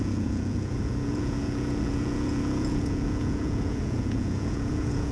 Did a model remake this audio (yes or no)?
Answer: yes